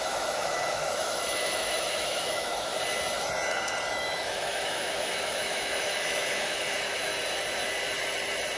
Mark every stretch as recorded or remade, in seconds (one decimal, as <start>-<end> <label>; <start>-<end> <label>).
0.0-2.7 remade; 2.7-3.9 recorded; 3.9-7.1 remade; 7.1-8.6 recorded